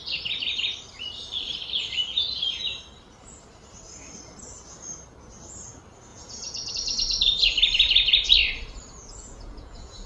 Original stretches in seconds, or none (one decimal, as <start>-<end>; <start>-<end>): 0.0-6.1; 6.7-9.0